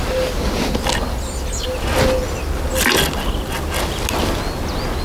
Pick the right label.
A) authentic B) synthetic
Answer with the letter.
A